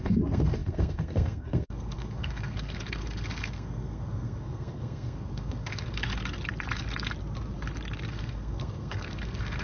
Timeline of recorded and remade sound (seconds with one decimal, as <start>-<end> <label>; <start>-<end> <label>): 0.0-6.1 remade; 6.1-8.1 recorded; 8.1-9.6 remade